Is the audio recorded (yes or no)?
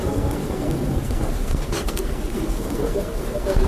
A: no